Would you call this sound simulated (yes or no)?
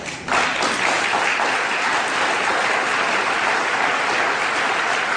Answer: no